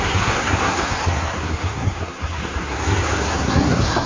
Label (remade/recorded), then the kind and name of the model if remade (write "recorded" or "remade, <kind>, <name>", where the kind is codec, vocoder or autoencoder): remade, codec, SNAC